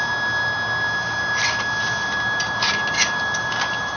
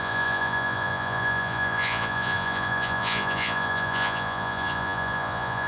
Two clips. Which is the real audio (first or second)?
first